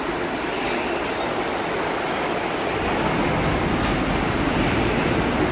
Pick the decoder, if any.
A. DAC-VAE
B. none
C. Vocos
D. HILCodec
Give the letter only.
B